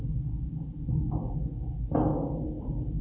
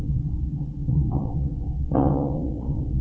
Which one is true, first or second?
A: first